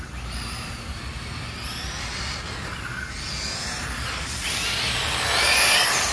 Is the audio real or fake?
real